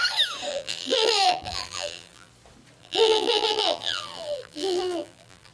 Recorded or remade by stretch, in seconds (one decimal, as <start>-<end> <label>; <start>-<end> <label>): 0.0-0.5 recorded; 0.5-2.3 remade; 2.3-2.8 recorded; 2.8-5.5 remade

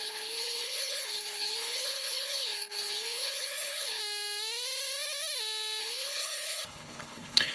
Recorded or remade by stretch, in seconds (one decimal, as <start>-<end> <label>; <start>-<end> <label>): 0.0-4.0 remade; 4.0-5.8 recorded; 5.8-7.5 remade

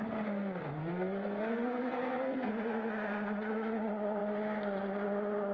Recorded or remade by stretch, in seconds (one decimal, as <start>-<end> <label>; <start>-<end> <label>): 0.0-0.8 recorded; 0.8-2.5 remade; 2.5-5.5 recorded

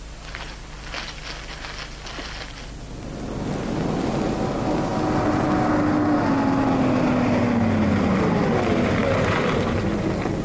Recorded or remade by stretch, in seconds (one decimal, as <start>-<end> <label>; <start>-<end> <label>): 0.0-10.4 recorded

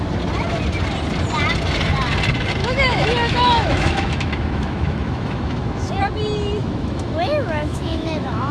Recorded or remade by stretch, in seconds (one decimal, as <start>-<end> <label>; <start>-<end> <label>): 0.0-2.6 recorded; 2.6-5.9 remade; 5.9-6.6 recorded; 6.6-8.5 remade